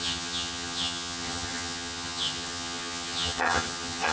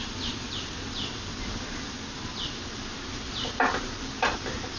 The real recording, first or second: second